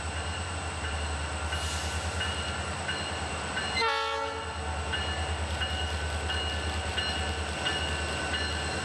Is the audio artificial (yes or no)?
no